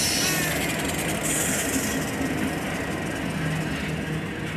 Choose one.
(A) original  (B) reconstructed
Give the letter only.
A